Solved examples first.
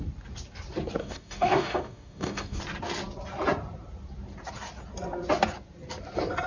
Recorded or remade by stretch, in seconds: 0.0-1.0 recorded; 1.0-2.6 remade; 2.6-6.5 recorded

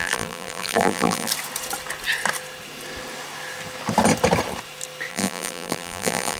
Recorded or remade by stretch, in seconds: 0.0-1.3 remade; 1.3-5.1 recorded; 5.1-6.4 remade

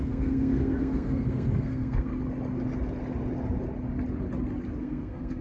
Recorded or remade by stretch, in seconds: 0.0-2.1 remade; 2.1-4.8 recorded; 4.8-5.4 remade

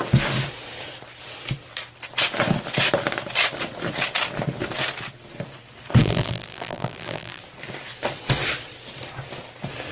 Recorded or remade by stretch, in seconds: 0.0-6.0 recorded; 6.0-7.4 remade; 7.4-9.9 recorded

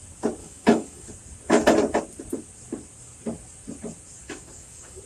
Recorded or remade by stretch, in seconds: 0.0-0.4 recorded; 0.4-1.1 remade; 1.1-4.2 recorded; 4.2-5.0 remade

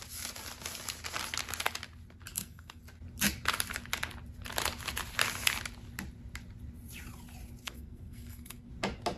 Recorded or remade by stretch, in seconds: 0.0-2.3 recorded; 2.3-2.8 remade; 2.8-7.6 recorded; 7.6-8.7 remade; 8.7-9.2 recorded

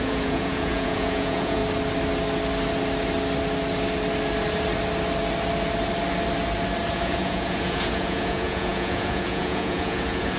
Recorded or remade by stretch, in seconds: 0.0-1.6 remade; 1.6-6.9 recorded; 6.9-10.4 remade